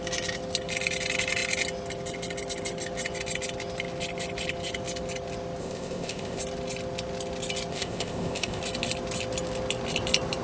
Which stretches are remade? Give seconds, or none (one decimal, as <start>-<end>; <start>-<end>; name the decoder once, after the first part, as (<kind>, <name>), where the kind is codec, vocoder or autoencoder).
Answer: 5.6-6.4 (codec, ZipCodec); 7.7-8.6